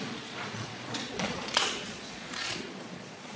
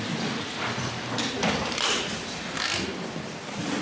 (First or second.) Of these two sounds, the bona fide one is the second